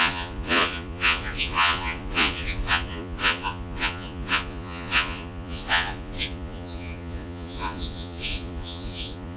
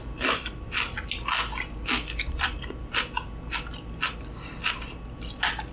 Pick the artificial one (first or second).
first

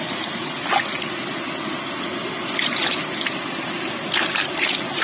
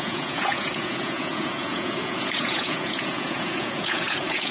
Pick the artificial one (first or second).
second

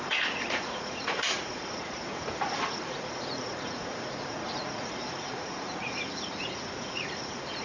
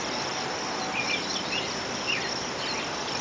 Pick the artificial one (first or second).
first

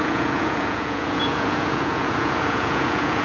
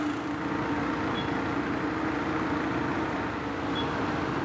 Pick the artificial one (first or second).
first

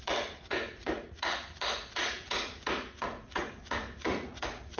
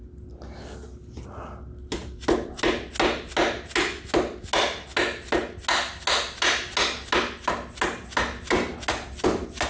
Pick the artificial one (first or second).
first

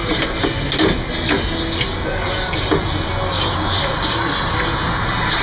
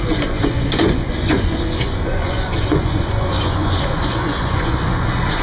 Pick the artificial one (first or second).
second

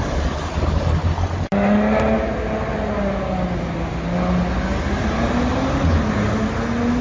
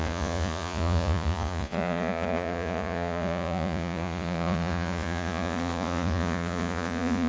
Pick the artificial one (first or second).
second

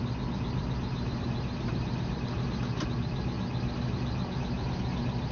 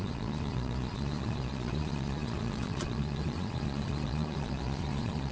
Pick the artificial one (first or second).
second